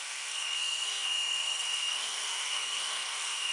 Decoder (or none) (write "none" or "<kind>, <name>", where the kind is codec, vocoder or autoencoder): codec, SNAC